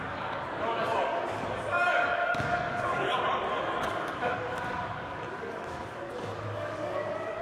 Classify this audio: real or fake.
fake